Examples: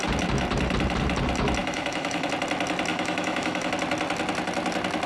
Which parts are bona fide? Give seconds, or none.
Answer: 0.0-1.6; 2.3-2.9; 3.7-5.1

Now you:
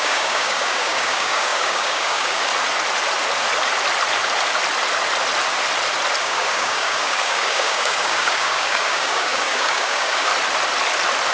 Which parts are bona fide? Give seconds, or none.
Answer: 2.5-6.2; 10.3-11.3